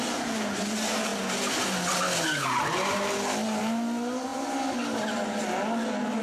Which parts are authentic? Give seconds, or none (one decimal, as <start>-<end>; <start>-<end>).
0.0-6.2